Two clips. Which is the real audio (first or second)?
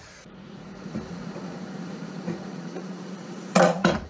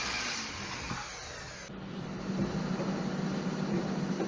second